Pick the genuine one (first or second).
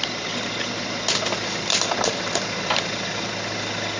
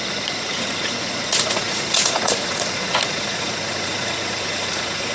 first